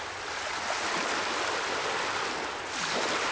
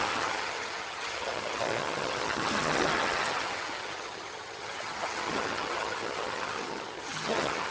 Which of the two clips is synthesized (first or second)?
second